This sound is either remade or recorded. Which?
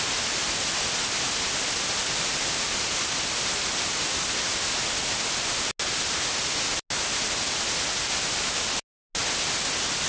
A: recorded